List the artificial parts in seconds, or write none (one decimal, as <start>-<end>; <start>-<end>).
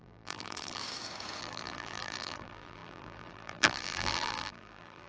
0.0-0.8; 1.4-5.1